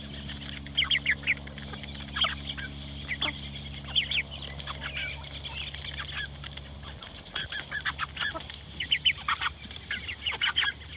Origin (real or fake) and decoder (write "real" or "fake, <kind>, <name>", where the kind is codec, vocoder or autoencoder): real